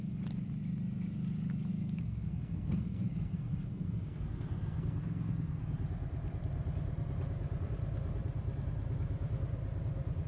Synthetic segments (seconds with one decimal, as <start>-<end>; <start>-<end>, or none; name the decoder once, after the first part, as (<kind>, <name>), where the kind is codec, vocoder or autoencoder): 1.7-5.6 (codec, SNAC)

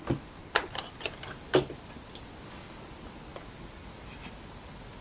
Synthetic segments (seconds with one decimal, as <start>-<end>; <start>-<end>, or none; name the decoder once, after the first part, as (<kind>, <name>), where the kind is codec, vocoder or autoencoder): 0.4-1.3 (vocoder, BigVGAN v2); 3.3-4.3

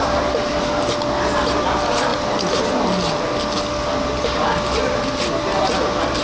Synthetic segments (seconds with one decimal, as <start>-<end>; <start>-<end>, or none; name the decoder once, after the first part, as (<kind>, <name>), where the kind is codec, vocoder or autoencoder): none

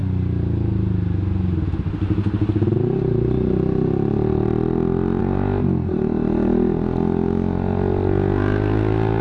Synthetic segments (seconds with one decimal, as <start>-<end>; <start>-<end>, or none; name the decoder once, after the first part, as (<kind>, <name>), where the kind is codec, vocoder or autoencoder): none